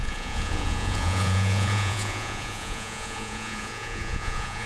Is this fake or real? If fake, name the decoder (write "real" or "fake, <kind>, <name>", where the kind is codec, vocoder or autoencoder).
fake, vocoder, Vocos